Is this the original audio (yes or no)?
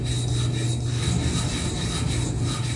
yes